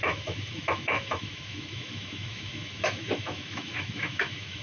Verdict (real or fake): fake